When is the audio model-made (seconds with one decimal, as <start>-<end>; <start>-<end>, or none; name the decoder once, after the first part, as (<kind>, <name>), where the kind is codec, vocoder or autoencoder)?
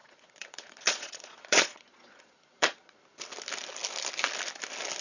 0.0-3.0 (vocoder, Vocos)